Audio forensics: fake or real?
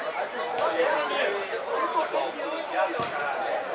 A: real